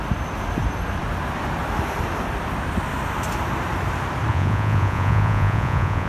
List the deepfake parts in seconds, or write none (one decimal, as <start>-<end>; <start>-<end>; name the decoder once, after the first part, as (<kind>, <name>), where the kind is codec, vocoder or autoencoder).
4.3-6.1 (vocoder, Vocos)